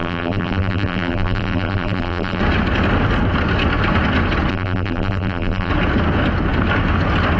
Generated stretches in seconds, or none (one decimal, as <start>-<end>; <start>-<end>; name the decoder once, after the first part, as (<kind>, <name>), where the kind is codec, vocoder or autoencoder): 0.0-2.4 (vocoder, BigVGAN v2); 4.5-5.7